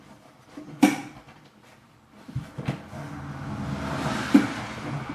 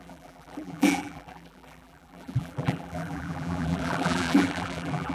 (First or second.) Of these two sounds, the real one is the first